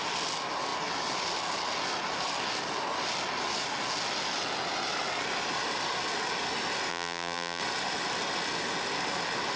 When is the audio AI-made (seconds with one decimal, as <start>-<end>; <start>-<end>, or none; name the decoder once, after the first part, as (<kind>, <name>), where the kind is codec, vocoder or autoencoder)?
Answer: 6.9-7.6 (vocoder, BigVGAN v2)